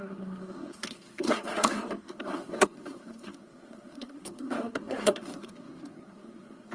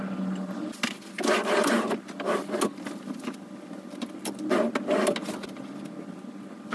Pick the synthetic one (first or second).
first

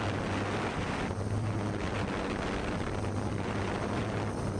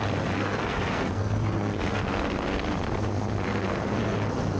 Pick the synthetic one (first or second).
second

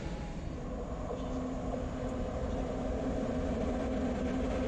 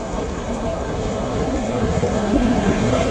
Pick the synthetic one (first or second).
second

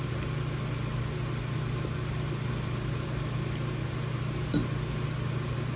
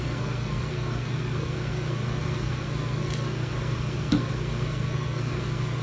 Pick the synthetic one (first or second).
second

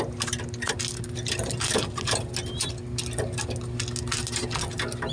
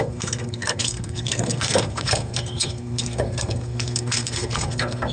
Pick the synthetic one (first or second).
second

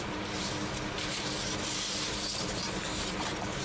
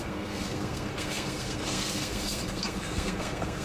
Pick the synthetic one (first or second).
second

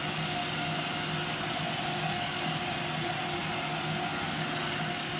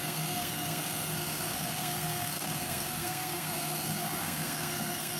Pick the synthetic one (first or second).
second